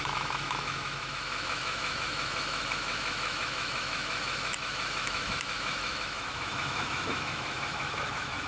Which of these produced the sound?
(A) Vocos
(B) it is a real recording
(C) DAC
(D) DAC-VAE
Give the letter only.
D